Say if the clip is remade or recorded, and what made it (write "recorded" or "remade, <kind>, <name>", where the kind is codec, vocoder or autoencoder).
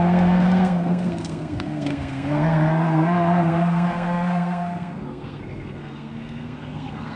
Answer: remade, codec, SNAC